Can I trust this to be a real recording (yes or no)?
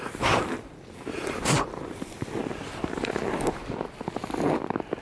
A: yes